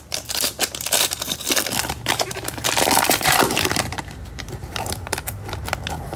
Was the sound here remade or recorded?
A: remade